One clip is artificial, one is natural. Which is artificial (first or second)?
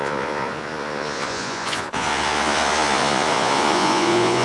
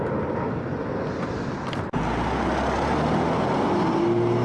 first